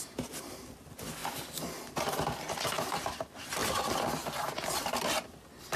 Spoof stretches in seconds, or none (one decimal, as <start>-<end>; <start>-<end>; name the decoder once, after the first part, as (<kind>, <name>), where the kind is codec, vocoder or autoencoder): none